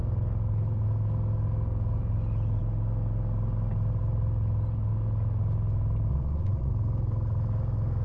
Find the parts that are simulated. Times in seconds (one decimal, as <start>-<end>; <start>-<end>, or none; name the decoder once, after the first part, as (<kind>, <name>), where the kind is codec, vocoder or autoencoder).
6.1-6.7 (vocoder, Vocos)